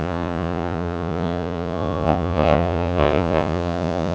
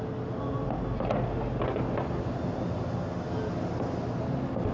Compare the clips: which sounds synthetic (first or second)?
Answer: first